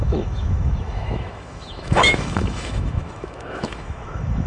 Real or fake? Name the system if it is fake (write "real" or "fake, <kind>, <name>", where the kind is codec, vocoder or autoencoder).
fake, autoencoder, DAC-VAE